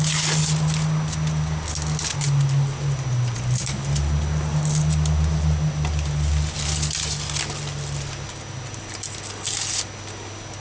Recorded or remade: recorded